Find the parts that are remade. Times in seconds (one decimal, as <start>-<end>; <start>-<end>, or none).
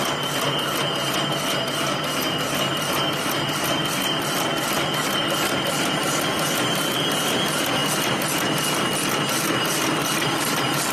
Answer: none